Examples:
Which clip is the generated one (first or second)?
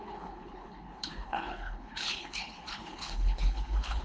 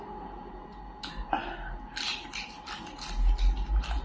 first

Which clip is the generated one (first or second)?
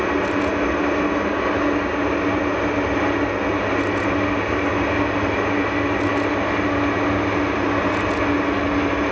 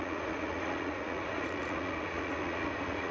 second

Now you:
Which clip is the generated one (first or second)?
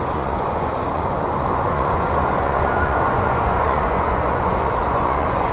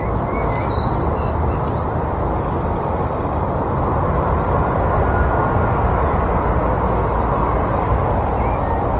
first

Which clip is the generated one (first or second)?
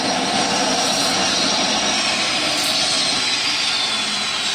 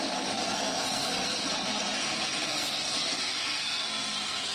second